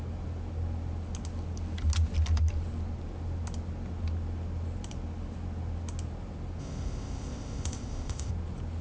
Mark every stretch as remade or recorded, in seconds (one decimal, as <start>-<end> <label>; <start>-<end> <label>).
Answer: 0.0-6.6 recorded; 6.6-8.3 remade; 8.3-8.8 recorded